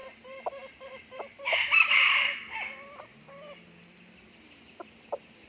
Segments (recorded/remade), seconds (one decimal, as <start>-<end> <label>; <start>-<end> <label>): 0.0-5.5 remade